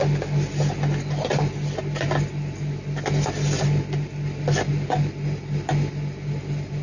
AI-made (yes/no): no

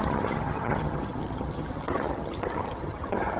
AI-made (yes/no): yes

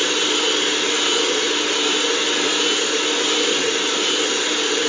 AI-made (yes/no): no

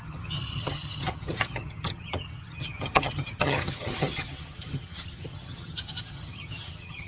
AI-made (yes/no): yes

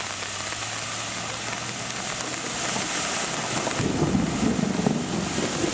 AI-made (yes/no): no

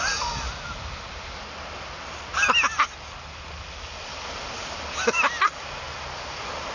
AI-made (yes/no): no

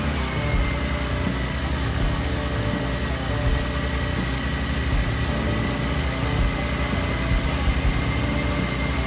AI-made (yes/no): no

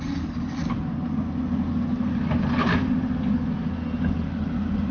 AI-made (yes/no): no